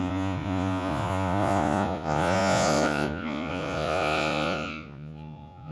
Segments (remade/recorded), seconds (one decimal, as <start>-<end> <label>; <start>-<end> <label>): 0.0-5.7 remade